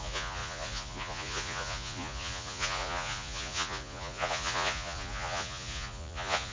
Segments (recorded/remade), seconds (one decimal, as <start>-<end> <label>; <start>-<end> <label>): 0.0-6.5 remade